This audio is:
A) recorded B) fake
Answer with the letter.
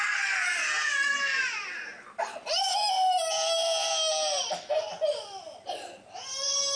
A